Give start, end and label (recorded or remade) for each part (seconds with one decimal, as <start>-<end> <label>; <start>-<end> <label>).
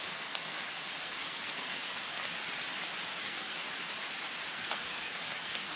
0.0-2.2 remade; 2.2-3.1 recorded; 3.1-3.6 remade; 3.6-4.5 recorded; 4.5-5.8 remade